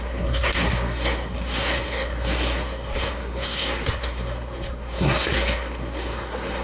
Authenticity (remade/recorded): remade